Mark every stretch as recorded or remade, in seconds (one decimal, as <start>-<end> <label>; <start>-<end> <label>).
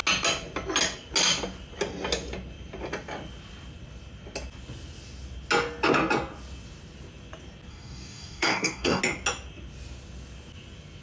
0.0-7.7 recorded; 7.7-9.0 remade; 9.0-11.0 recorded